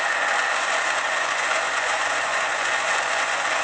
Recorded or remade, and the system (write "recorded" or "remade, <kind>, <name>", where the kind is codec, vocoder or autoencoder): remade, vocoder, Vocos